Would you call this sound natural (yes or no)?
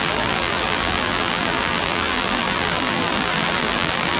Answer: no